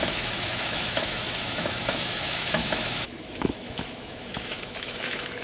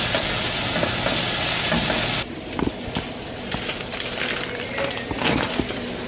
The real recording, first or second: second